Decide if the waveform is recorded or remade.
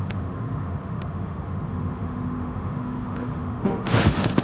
remade